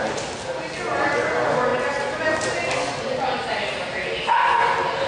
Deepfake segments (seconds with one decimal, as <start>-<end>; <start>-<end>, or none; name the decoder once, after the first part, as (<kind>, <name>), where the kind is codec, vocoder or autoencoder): none